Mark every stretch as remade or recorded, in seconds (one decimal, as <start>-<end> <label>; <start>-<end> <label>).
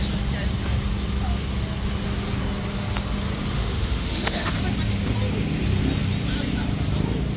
0.0-3.5 recorded; 3.5-4.6 remade; 4.6-7.4 recorded